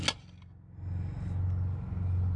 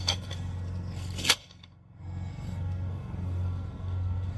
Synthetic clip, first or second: second